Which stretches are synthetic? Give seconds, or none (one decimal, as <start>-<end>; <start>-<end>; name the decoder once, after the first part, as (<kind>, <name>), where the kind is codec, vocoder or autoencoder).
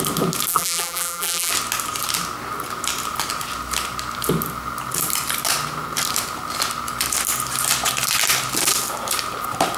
0.5-1.5 (vocoder, BigVGAN v2)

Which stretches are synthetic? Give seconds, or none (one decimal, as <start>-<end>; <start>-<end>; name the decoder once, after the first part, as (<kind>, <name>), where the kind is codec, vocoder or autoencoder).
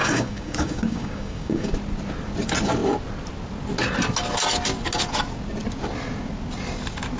0.0-1.7 (codec, DAC)